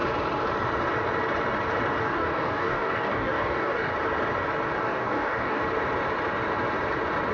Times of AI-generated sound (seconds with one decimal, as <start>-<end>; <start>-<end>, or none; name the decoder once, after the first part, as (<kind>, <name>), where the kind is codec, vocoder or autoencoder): 2.0-3.9 (codec, DAC); 4.8-5.6